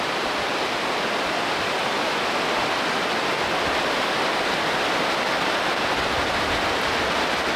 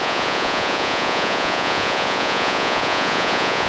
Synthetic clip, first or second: second